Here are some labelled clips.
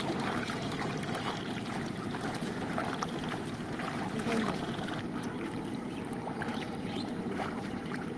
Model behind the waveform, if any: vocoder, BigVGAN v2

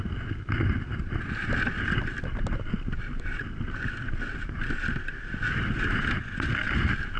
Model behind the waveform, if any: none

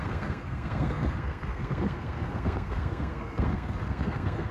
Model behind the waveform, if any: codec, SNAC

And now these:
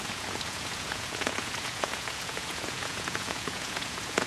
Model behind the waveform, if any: vocoder, Vocos